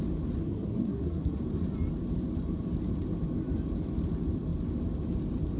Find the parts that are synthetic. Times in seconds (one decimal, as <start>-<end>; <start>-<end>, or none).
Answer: 0.4-1.4